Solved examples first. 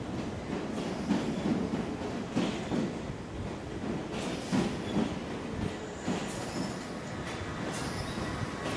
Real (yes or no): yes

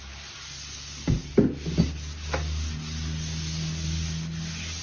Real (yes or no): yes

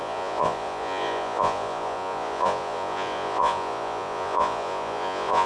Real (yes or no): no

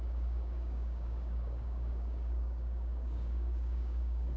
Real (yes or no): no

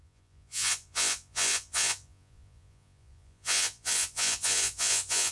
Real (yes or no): no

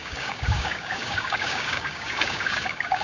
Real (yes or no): no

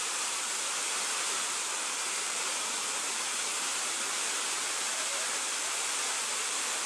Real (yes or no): no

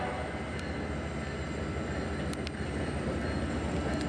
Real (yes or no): yes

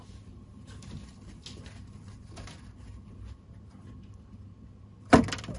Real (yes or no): yes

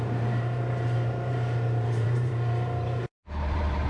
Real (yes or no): no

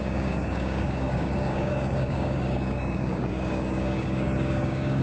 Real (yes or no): no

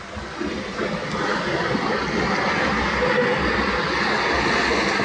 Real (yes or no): yes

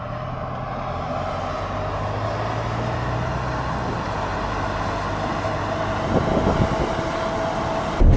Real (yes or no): yes